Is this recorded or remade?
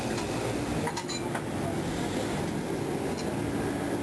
recorded